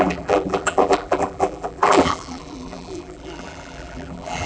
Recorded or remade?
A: remade